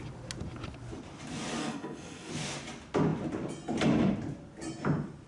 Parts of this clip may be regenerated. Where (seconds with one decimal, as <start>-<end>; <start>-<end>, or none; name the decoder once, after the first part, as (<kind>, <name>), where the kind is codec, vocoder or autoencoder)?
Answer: 1.6-2.3 (codec, SNAC)